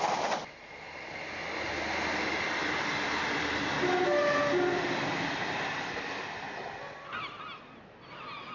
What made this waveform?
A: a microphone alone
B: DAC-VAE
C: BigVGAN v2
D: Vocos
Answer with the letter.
A